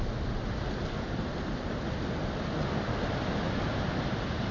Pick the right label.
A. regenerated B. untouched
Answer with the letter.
B